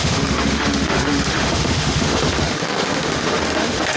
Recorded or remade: remade